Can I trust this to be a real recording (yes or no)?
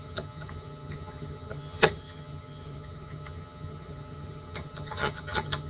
no